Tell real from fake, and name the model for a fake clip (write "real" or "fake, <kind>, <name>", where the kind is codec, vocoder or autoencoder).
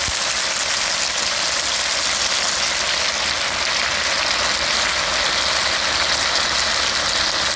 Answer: real